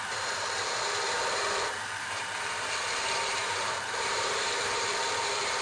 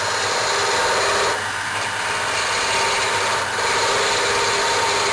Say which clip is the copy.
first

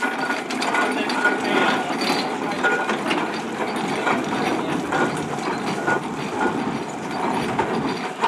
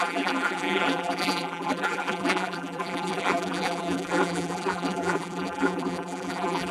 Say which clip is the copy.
second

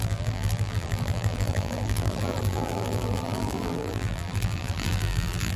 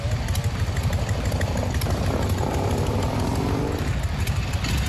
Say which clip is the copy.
first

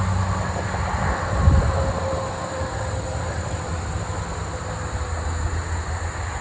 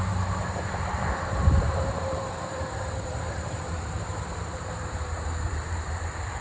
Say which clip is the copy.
second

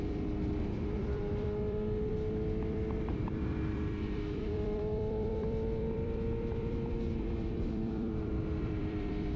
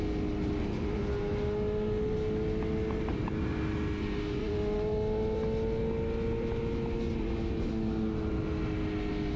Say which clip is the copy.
first